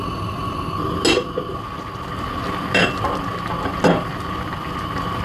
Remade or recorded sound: recorded